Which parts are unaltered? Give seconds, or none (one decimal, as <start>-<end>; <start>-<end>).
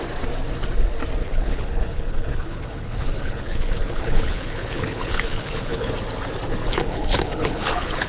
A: 0.0-1.2; 5.9-6.7